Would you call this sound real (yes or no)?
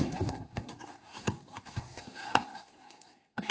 no